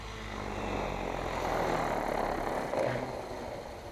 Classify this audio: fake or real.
real